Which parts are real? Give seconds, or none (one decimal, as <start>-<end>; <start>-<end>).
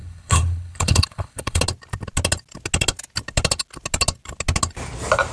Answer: 1.6-5.3